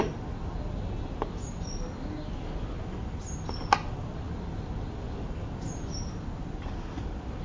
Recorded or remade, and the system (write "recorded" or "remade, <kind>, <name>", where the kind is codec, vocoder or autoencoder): recorded